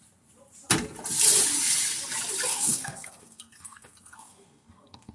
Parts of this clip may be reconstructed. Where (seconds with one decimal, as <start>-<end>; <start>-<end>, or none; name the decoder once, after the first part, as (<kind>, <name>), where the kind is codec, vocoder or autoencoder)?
2.5-5.1 (codec, SNAC)